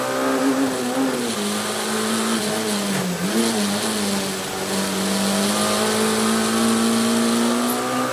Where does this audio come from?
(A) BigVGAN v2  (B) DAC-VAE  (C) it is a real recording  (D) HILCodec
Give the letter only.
C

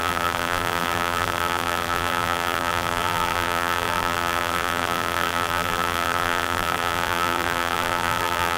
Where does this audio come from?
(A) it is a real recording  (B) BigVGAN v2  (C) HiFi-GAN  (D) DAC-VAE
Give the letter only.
B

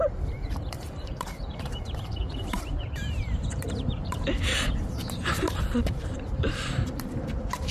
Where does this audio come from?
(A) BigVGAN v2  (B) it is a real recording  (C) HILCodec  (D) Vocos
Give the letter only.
A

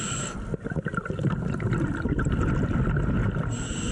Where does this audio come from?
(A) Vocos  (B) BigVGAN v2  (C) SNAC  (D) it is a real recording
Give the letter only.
D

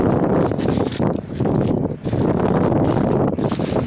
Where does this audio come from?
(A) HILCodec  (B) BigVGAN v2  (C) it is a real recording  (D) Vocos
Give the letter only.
C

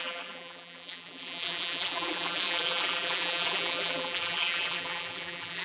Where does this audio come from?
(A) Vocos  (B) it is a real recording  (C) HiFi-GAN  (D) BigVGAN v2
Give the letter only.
D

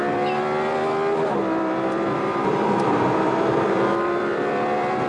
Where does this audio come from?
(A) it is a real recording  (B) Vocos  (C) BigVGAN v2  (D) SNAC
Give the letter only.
C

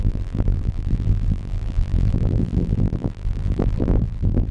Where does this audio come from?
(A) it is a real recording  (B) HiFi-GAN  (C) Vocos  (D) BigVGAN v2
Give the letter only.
D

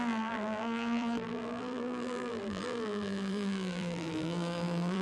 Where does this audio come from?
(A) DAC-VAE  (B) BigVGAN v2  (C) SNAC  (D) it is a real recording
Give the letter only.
B